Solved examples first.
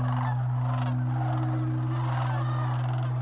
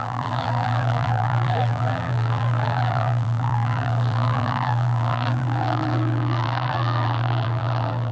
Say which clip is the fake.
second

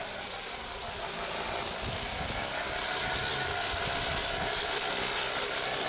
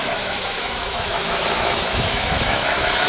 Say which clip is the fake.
second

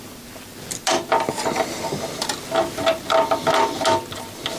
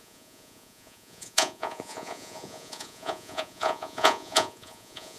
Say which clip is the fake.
second